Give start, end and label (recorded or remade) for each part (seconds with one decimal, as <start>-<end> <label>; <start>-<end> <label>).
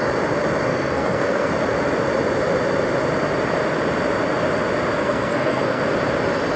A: 0.0-0.7 recorded; 0.7-1.5 remade; 1.5-5.0 recorded; 5.0-5.8 remade; 5.8-6.6 recorded